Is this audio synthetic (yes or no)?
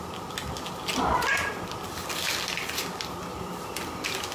no